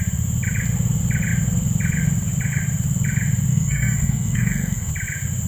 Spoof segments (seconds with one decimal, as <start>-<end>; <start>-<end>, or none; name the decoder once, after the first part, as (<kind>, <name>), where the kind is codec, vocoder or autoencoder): 3.5-4.9 (codec, SNAC)